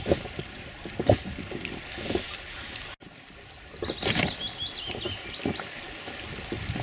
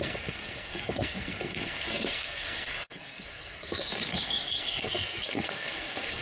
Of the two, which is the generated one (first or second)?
second